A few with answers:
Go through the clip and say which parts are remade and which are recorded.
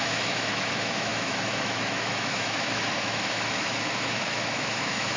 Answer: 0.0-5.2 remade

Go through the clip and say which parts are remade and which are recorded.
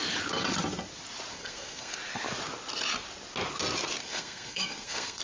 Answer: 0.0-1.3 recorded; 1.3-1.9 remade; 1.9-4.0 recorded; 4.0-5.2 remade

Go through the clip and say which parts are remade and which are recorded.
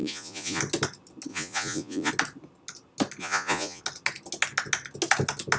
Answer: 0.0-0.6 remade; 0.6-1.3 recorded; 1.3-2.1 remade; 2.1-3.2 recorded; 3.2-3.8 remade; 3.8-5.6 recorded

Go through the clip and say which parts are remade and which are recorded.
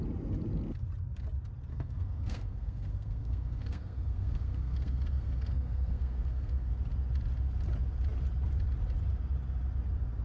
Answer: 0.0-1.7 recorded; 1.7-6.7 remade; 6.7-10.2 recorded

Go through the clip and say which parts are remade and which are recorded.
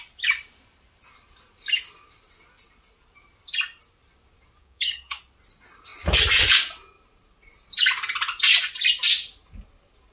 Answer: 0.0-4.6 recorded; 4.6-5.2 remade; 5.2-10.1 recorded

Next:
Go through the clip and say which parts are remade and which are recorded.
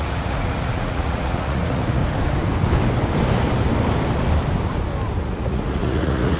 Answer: 0.0-2.0 remade; 2.0-5.2 recorded; 5.2-6.4 remade